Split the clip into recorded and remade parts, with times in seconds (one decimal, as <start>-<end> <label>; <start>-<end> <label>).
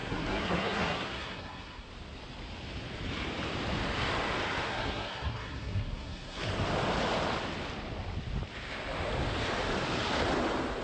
0.0-1.9 remade; 1.9-4.7 recorded; 4.7-6.4 remade; 6.4-10.8 recorded